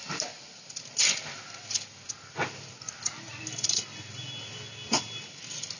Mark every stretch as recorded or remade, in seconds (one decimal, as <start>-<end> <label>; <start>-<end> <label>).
0.0-5.8 recorded